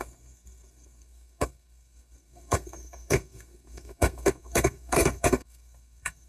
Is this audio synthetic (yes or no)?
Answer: yes